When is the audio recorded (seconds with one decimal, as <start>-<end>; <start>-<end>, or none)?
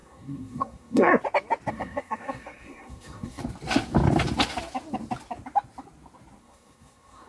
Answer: 1.1-1.7; 3.4-6.4